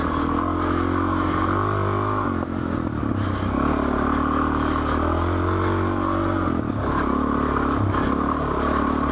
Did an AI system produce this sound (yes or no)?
no